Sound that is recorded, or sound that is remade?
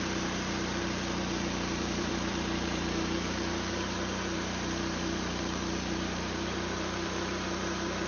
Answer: remade